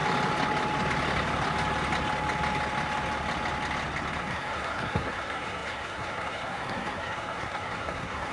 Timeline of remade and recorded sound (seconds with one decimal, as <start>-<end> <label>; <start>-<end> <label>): 0.0-4.2 recorded; 4.2-8.3 remade

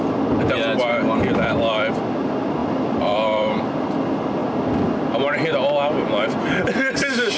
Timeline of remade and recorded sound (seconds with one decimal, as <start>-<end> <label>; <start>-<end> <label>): 0.0-2.6 recorded; 2.6-3.6 remade; 3.6-7.4 recorded

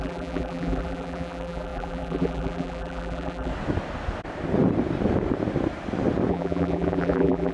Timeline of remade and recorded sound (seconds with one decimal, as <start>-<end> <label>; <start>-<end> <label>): 0.0-3.5 remade; 3.5-6.3 recorded; 6.3-7.5 remade

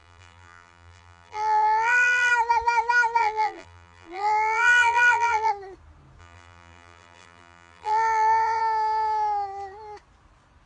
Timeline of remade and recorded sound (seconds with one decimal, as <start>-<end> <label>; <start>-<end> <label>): 0.0-2.3 remade; 2.3-3.2 recorded; 3.2-5.5 remade; 5.5-6.2 recorded; 6.2-8.6 remade; 8.6-10.7 recorded

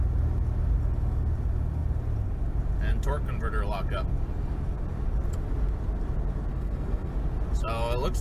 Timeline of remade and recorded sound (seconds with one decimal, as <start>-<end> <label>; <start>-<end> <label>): 0.0-6.5 recorded; 6.5-7.1 remade; 7.1-8.2 recorded

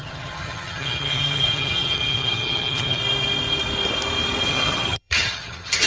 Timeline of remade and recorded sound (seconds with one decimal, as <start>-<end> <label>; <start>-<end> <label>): 0.0-3.0 remade; 3.0-4.5 recorded; 4.5-5.9 remade

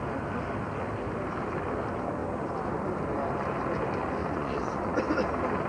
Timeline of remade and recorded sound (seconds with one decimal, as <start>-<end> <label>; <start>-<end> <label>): 0.0-4.2 recorded; 4.2-5.0 remade; 5.0-5.7 recorded